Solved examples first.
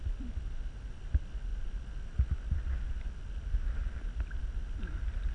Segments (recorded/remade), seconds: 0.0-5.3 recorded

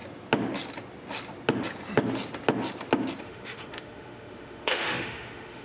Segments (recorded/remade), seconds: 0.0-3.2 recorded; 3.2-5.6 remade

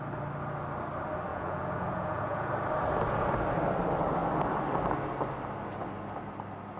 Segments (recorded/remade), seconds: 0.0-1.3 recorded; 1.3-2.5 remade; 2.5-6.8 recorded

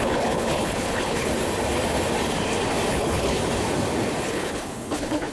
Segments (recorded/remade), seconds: 0.0-1.3 remade; 1.3-2.9 recorded; 2.9-3.4 remade; 3.4-4.2 recorded; 4.2-5.3 remade